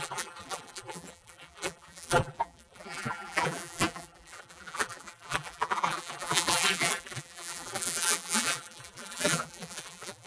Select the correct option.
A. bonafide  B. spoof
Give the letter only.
B